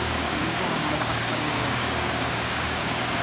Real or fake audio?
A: fake